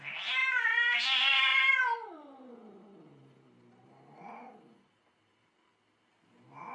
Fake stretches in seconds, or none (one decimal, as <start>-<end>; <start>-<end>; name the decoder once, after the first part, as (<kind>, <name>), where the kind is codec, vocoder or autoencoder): 0.4-1.0 (vocoder, BigVGAN v2); 1.5-5.5